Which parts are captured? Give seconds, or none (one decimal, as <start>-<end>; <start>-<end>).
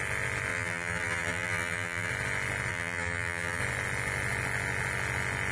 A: 0.0-0.5; 2.1-2.7; 3.6-5.5